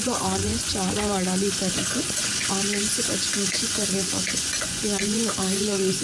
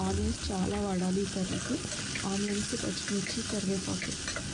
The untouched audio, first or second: second